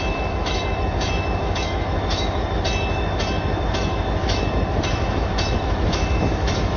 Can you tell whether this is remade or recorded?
remade